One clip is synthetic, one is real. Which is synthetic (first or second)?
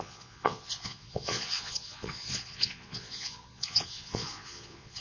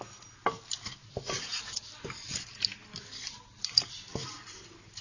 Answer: first